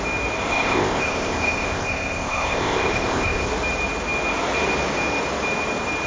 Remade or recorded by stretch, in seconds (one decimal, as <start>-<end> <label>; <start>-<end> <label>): 0.0-0.5 recorded; 0.5-3.5 remade; 3.5-6.1 recorded